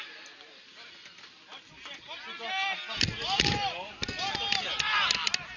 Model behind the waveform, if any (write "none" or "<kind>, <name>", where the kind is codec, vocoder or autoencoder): none